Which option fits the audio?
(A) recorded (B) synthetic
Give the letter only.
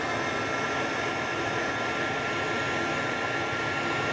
A